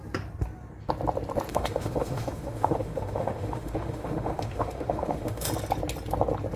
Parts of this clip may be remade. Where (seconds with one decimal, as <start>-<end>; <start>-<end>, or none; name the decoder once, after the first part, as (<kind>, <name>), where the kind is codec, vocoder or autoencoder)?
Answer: 1.5-5.5 (autoencoder, DAC-VAE)